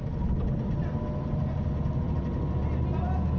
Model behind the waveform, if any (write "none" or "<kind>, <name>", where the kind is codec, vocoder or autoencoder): none